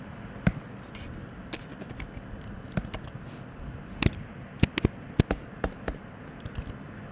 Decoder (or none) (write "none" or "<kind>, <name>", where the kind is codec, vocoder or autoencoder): none